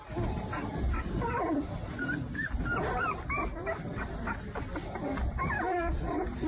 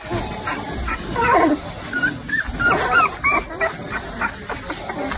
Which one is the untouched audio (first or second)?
second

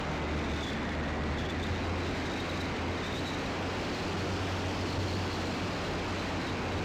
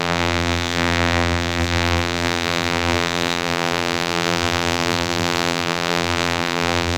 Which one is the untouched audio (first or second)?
first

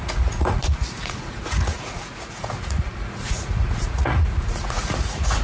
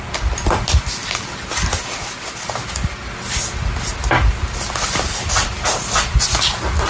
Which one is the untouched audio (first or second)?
second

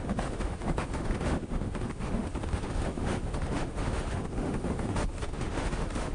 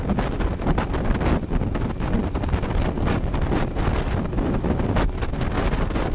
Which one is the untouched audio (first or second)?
second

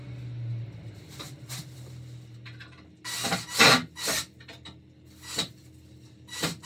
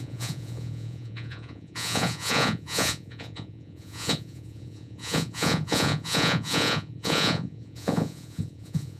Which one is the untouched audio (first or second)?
first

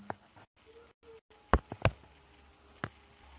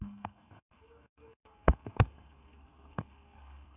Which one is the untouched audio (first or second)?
first